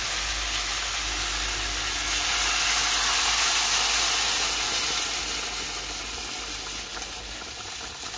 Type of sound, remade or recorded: recorded